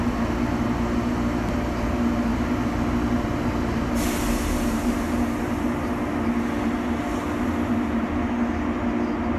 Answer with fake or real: real